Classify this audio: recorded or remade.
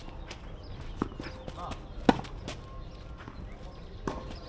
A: recorded